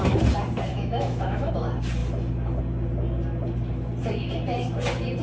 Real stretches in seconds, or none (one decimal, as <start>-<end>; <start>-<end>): 0.0-0.7; 1.5-5.2

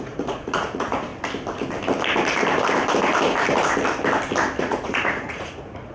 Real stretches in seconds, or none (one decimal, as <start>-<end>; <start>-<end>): 1.1-4.6

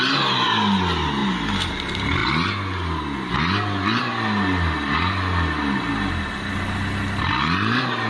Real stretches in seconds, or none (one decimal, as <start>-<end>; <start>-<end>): 0.0-8.1